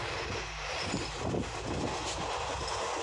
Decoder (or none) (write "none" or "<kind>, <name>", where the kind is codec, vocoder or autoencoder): none